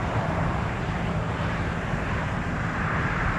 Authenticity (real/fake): fake